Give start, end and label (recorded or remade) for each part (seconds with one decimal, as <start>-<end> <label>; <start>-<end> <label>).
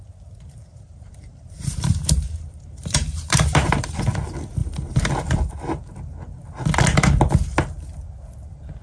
0.0-0.7 recorded; 0.7-4.0 remade; 4.0-4.6 recorded; 4.6-6.0 remade; 6.0-8.8 recorded